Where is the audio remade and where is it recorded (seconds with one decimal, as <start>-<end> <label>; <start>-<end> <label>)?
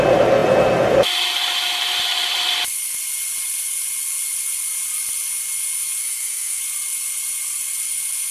0.0-6.0 recorded; 6.0-6.6 remade; 6.6-8.3 recorded